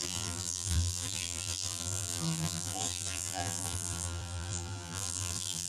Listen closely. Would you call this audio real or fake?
fake